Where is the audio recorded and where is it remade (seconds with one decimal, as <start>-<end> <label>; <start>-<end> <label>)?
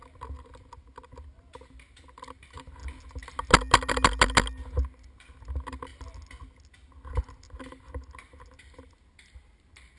0.0-10.0 recorded